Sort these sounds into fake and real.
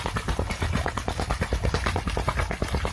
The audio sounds real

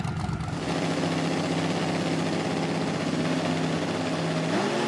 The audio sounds real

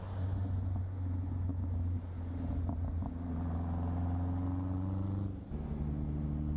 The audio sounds real